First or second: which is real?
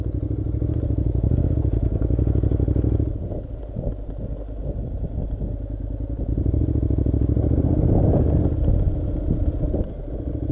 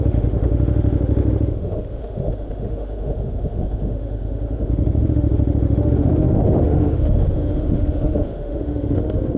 first